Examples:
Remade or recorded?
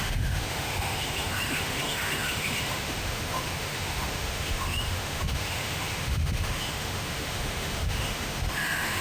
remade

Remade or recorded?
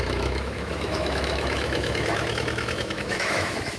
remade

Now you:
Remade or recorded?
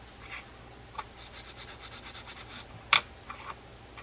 recorded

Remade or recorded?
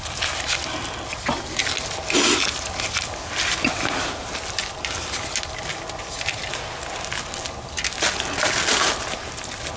recorded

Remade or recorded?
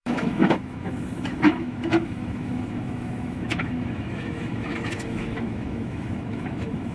remade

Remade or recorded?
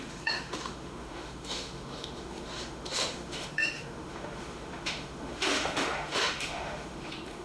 remade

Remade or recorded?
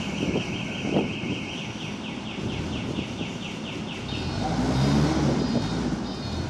recorded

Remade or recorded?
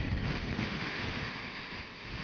remade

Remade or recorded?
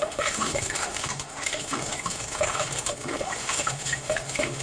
remade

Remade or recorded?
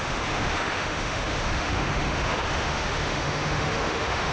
remade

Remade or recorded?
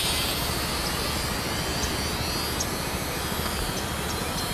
recorded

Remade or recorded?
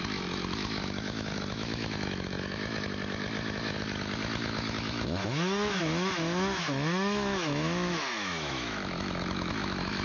remade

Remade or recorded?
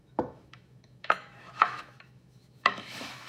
remade